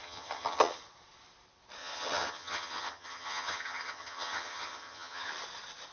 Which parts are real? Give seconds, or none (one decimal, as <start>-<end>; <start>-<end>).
0.8-1.8; 5.3-5.9